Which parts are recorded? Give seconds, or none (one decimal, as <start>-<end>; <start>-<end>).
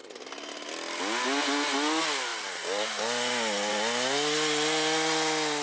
0.0-5.6